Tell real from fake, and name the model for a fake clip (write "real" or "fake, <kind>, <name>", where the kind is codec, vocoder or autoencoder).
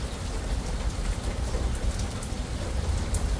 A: real